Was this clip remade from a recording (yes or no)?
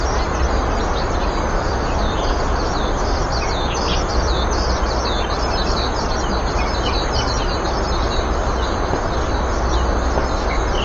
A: no